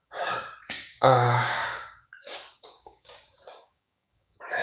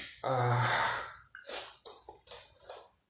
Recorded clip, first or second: second